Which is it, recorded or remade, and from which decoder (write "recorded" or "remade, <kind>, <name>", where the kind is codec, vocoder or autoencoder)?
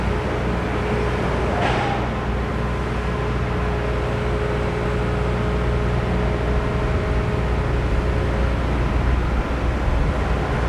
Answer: recorded